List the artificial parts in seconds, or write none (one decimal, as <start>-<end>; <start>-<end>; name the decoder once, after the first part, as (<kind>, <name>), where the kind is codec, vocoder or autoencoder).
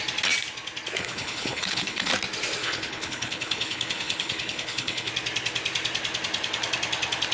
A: 1.0-2.1 (codec, HILCodec); 2.6-5.1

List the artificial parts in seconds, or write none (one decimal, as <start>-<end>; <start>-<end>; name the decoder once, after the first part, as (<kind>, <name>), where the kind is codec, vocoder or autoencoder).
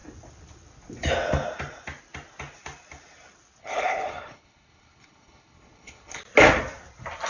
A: 3.6-6.2 (codec, HILCodec)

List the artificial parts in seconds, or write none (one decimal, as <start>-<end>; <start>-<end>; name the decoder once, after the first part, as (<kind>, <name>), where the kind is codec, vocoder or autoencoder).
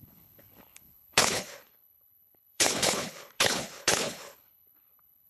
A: 0.0-5.3 (codec, HILCodec)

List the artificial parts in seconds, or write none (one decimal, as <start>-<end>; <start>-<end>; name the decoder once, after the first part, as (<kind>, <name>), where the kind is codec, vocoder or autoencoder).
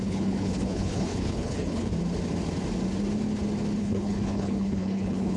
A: 0.0-1.9 (codec, HILCodec); 3.8-5.4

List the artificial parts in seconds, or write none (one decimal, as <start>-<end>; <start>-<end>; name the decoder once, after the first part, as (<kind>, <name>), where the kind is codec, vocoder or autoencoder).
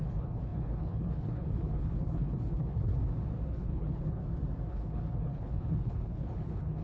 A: 0.0-2.9 (codec, HILCodec); 3.5-4.2; 4.7-6.8